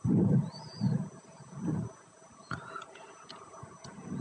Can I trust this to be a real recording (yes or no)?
no